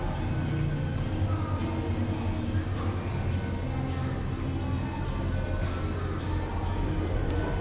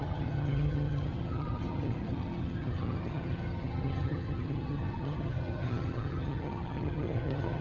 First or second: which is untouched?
first